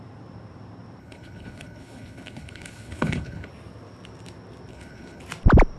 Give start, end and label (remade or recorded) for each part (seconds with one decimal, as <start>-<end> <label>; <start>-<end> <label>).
0.0-1.0 recorded; 1.0-3.5 remade; 3.5-4.7 recorded; 4.7-5.2 remade; 5.2-5.8 recorded